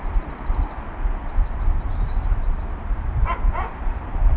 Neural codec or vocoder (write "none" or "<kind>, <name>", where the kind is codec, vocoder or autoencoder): vocoder, BigVGAN v2